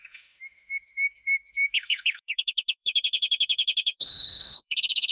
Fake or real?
fake